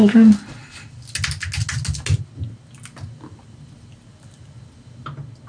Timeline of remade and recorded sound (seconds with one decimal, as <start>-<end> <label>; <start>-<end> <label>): 0.0-5.5 recorded